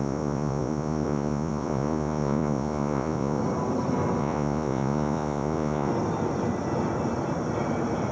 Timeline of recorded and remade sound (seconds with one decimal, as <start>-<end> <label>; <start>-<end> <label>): 0.0-3.4 remade; 3.4-4.2 recorded; 4.2-5.9 remade; 5.9-8.1 recorded